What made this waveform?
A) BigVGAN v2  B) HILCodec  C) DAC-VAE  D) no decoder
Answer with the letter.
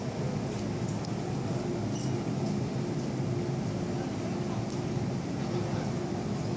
D